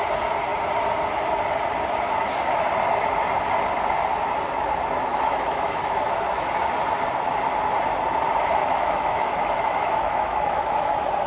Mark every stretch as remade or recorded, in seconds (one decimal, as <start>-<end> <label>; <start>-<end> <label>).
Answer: 0.0-5.1 recorded; 5.1-6.5 remade; 6.5-8.6 recorded; 8.6-10.9 remade; 10.9-11.3 recorded